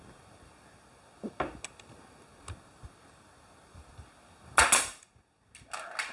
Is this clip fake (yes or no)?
no